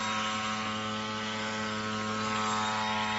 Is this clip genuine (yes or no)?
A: yes